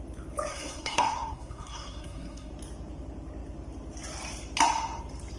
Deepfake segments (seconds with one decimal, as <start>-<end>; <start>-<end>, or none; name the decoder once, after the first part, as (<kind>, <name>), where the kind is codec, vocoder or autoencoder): 0.5-2.5 (codec, SNAC)

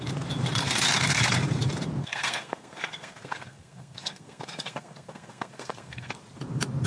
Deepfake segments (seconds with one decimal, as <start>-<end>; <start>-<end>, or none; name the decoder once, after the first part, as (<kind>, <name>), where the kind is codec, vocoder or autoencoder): 2.0-6.1 (codec, SNAC)